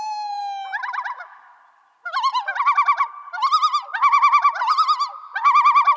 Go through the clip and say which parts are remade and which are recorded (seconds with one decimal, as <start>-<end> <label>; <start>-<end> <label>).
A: 0.0-0.4 remade; 0.4-4.0 recorded; 4.0-6.0 remade